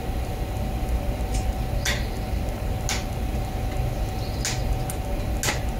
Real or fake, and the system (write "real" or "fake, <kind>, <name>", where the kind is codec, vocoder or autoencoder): real